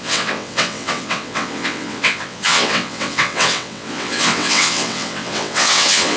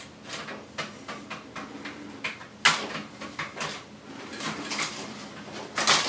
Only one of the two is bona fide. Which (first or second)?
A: second